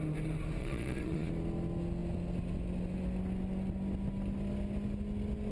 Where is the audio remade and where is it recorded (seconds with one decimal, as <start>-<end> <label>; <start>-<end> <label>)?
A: 0.0-0.6 recorded; 0.6-1.3 remade; 1.3-5.5 recorded